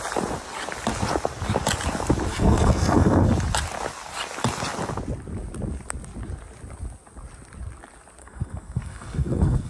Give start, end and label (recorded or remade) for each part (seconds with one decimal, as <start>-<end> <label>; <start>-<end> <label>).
0.0-2.3 recorded; 2.3-3.3 remade; 3.3-8.2 recorded; 8.2-9.7 remade